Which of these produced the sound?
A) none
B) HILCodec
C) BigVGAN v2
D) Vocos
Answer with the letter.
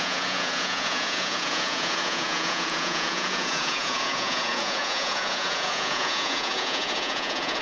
D